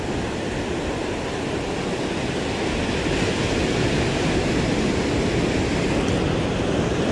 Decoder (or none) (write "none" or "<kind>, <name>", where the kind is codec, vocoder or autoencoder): none